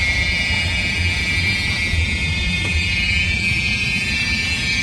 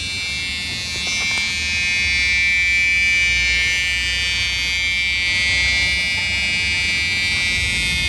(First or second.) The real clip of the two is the second